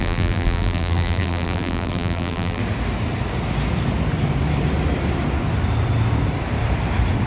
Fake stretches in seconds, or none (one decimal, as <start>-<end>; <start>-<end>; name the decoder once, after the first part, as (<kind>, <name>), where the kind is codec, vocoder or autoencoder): 0.0-2.6 (vocoder, BigVGAN v2)